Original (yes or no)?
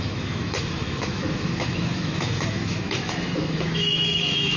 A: no